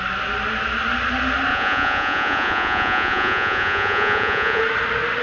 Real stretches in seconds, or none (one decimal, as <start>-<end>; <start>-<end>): 0.0-1.5; 4.6-5.2